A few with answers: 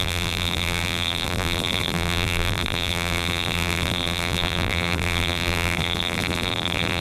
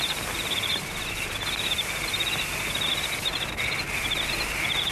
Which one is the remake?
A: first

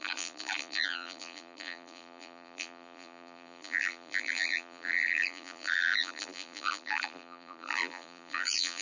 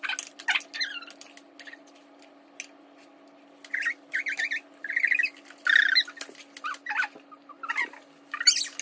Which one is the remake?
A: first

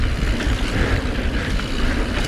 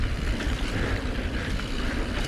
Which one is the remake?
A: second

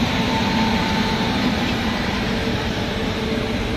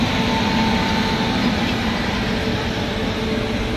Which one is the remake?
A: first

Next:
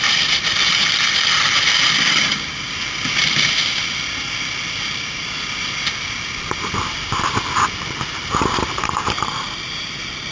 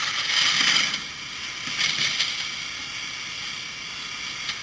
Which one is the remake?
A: first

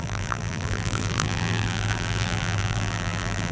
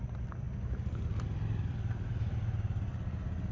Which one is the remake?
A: first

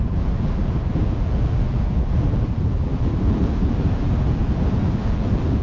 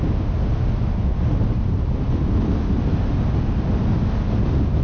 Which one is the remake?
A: first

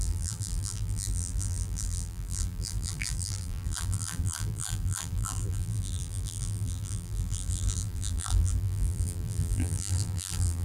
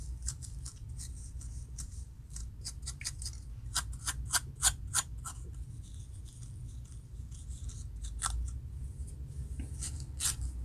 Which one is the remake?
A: first